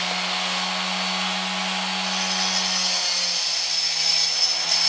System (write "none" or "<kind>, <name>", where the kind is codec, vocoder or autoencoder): none